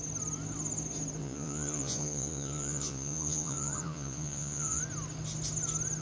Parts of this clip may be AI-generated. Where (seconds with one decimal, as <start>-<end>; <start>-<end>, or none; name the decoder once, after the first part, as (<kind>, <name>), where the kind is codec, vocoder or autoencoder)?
1.2-4.8 (vocoder, Vocos)